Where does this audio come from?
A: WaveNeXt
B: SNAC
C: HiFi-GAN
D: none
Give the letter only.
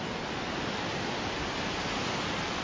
D